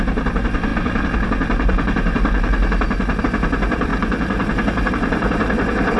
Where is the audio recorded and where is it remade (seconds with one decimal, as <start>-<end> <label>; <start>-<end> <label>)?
0.0-6.0 recorded